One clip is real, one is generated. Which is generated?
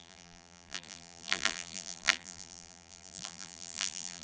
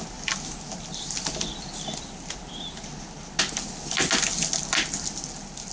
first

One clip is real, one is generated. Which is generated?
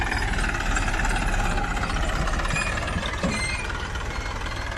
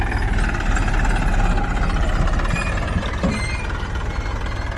first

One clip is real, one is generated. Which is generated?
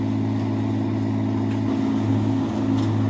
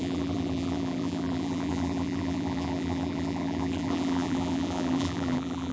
second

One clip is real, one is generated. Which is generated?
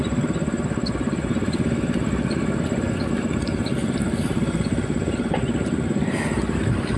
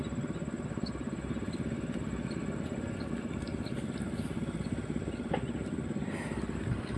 first